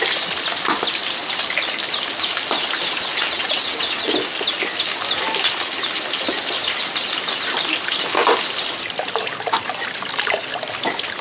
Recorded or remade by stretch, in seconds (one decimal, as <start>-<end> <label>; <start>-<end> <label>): 0.0-3.1 recorded; 3.1-4.1 remade; 4.1-11.2 recorded